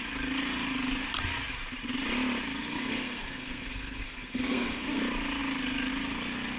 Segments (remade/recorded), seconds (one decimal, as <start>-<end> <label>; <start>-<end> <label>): 0.0-2.6 recorded; 2.6-5.0 remade; 5.0-6.6 recorded

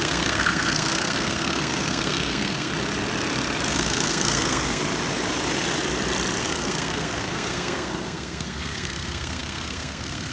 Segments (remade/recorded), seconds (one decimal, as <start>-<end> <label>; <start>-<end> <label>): 0.0-2.7 remade; 2.7-3.7 recorded; 3.7-4.8 remade; 4.8-6.4 recorded; 6.4-10.3 remade